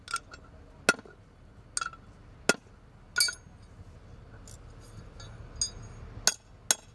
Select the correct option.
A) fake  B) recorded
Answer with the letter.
B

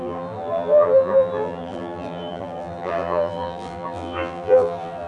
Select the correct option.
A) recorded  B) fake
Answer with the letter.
B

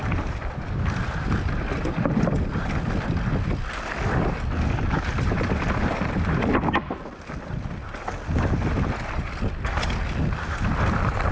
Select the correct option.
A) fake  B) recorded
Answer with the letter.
A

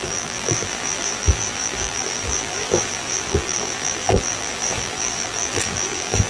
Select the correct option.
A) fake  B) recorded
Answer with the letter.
A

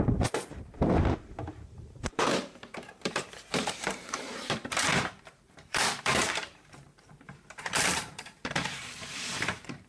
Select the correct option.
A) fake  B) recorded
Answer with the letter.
A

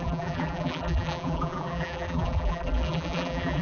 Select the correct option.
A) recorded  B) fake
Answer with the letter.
B